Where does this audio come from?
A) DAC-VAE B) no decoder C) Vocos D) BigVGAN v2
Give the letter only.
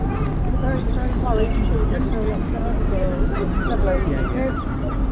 B